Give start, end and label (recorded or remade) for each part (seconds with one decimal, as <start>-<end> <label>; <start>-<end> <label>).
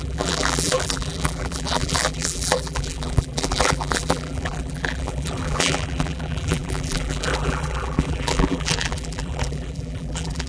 0.0-10.5 remade